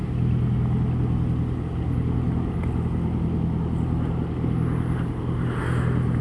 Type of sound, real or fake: real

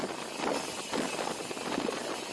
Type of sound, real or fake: real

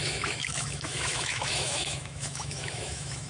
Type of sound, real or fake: fake